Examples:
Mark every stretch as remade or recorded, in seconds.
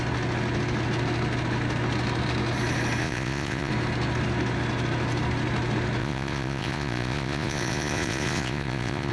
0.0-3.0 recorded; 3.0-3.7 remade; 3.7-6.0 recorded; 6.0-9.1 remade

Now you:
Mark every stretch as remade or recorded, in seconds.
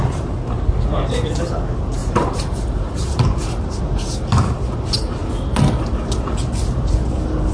0.0-2.0 recorded; 2.0-3.8 remade; 3.8-7.5 recorded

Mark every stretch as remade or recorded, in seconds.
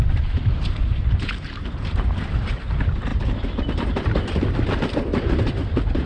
0.0-3.1 remade; 3.1-3.8 recorded; 3.8-6.1 remade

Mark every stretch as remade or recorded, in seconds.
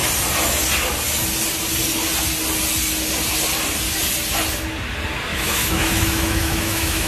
0.0-5.3 recorded; 5.3-7.1 remade